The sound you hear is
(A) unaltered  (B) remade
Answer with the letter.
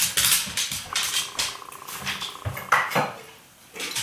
A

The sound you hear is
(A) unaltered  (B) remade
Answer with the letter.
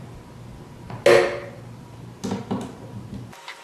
A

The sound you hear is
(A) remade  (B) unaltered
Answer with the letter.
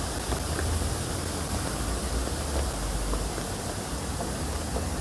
B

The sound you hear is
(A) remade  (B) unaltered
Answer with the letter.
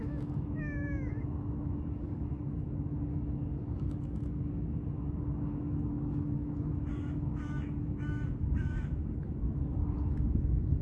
A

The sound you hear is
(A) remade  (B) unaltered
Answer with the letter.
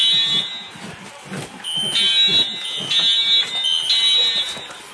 B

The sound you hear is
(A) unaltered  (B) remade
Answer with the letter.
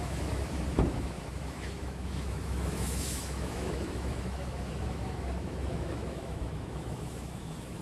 B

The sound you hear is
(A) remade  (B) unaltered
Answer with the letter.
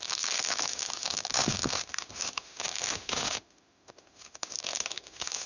A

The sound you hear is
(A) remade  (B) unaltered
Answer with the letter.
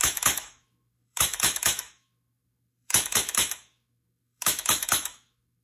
A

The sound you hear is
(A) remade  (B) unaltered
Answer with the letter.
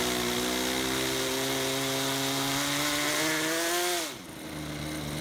B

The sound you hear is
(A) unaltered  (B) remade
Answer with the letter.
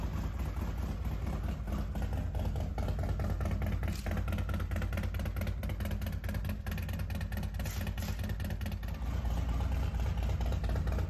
A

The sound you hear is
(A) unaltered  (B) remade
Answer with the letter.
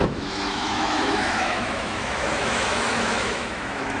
B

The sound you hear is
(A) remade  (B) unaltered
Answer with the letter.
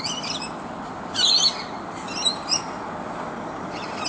B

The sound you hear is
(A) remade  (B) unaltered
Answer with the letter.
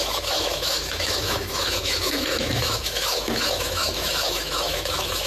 A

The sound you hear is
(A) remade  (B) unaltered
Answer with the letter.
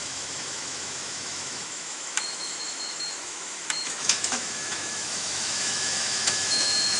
A